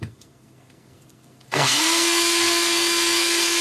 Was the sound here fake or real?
fake